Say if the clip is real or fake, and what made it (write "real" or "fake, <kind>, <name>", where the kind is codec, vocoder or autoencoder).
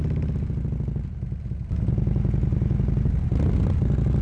real